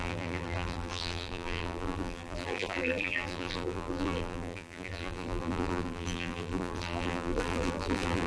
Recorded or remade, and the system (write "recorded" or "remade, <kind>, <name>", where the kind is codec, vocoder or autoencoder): remade, vocoder, BigVGAN v2